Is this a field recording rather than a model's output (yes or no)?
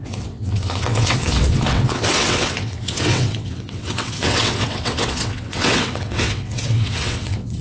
no